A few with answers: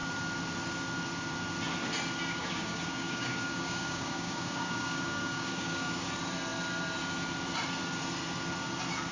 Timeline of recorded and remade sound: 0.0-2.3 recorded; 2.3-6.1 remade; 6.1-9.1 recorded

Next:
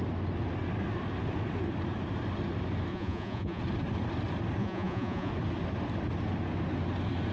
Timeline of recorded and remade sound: 0.0-2.9 recorded; 2.9-3.6 remade; 3.6-4.6 recorded; 4.6-5.3 remade; 5.3-7.3 recorded

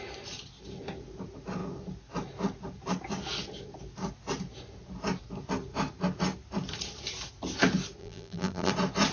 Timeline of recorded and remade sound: 0.0-8.0 recorded; 8.0-8.7 remade; 8.7-9.1 recorded

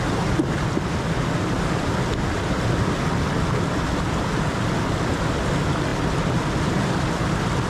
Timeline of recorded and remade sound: 0.0-7.7 recorded

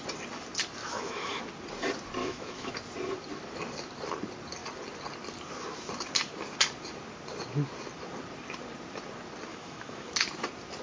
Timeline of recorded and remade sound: 0.0-0.8 recorded; 0.8-1.4 remade; 1.4-2.2 recorded; 2.2-2.7 remade; 2.7-9.5 recorded; 9.5-10.1 remade; 10.1-10.8 recorded

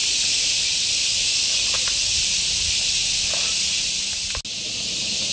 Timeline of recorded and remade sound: 0.0-5.3 recorded